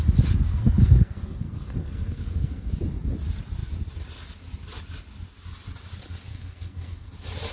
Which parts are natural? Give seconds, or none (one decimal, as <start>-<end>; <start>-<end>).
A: 0.0-0.5; 2.7-6.3; 7.1-7.5